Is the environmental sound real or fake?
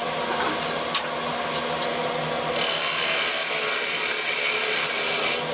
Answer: real